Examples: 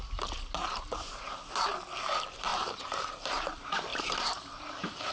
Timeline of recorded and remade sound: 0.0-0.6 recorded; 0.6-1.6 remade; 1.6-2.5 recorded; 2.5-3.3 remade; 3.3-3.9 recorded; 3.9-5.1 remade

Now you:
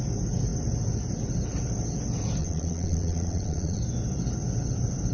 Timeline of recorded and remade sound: 0.0-2.4 recorded; 2.4-3.8 remade; 3.8-5.1 recorded